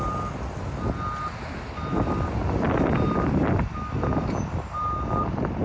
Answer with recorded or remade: recorded